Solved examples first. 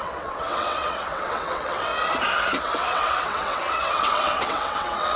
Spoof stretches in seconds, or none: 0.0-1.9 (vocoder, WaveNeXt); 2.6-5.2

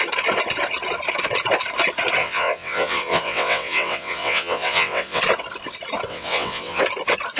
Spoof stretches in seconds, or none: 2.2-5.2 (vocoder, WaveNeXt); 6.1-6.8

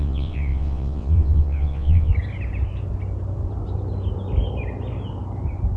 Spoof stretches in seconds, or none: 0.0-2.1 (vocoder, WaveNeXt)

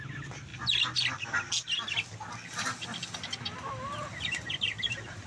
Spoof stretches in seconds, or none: none

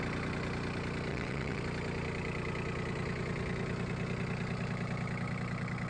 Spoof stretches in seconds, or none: 1.1-1.6 (vocoder, WaveNeXt)